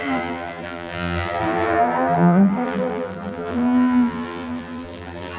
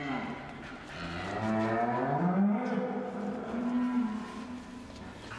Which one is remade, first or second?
first